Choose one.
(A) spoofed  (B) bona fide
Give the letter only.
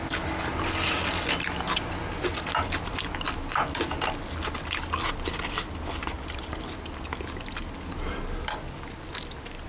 B